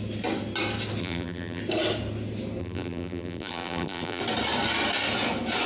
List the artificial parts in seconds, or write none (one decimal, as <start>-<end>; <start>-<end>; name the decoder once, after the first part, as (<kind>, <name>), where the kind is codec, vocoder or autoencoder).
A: 1.0-1.6 (vocoder, BigVGAN v2); 2.6-4.2